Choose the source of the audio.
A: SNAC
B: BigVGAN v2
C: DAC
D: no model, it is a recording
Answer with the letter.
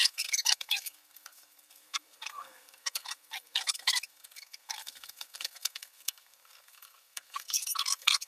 A